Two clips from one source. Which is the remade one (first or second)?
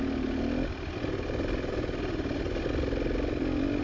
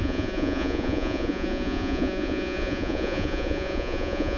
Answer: second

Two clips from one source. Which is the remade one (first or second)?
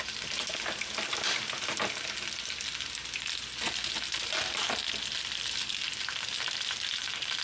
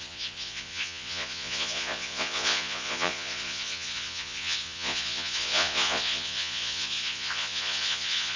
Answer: second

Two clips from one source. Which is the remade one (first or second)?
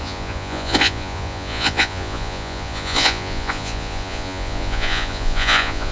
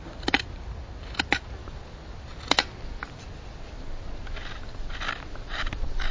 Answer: first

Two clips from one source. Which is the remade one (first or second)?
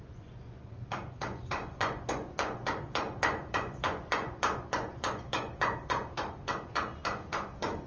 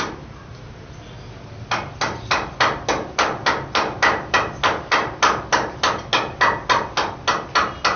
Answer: first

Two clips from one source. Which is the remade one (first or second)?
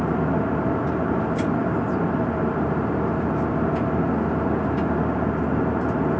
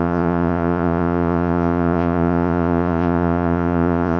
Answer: second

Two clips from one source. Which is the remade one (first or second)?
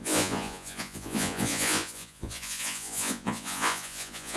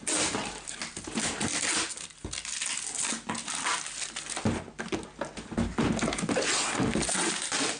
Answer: first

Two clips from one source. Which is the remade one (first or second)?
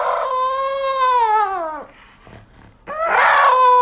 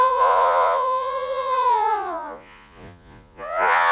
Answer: second